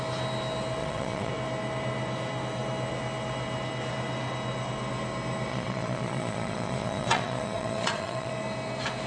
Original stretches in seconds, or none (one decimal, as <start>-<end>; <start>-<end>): 0.0-0.8; 1.3-5.5; 8.3-9.1